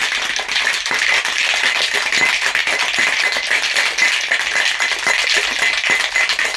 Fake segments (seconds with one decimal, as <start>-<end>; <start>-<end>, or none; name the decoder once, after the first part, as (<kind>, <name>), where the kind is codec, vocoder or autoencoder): none